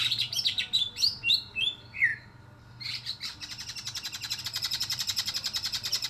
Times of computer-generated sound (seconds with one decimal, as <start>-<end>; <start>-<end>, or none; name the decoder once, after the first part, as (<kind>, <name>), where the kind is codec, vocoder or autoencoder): 0.0-2.1 (vocoder, BigVGAN v2); 4.4-6.1